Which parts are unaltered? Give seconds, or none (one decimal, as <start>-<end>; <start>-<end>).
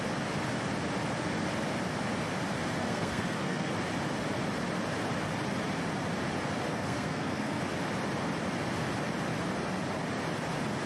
0.0-2.8; 3.7-6.7; 7.6-10.9